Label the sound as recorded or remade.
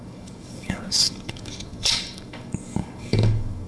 remade